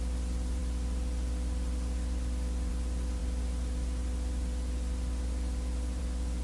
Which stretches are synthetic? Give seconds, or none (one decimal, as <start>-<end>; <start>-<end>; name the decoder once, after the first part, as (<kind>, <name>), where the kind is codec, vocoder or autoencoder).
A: none